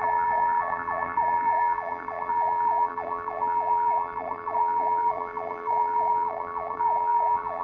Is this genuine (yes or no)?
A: no